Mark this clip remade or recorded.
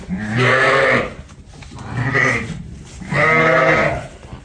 recorded